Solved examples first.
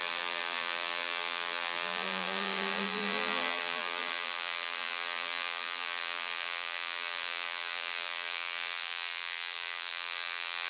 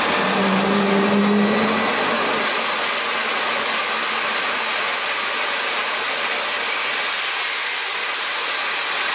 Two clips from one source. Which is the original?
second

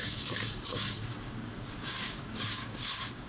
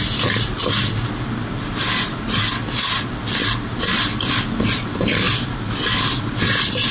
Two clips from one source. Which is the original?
second